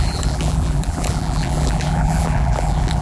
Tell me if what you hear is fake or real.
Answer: fake